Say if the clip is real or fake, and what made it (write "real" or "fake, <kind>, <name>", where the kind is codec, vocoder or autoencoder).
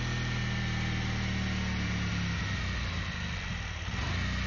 real